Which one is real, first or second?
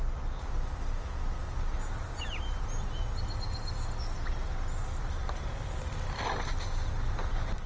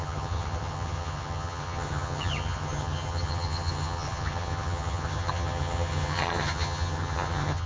first